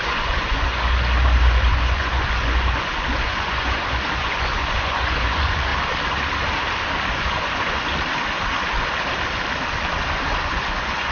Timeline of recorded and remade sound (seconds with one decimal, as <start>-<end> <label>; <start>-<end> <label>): 0.0-5.7 remade; 5.7-7.1 recorded; 7.1-7.9 remade; 7.9-10.4 recorded; 10.4-11.1 remade